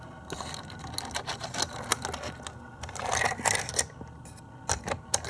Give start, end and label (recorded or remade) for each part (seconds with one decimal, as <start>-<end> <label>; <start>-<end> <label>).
0.0-5.3 recorded